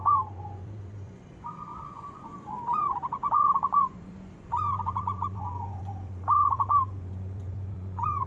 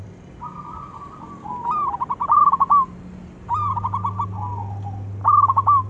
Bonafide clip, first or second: second